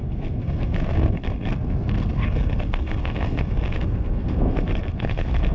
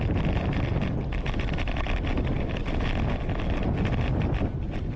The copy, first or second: first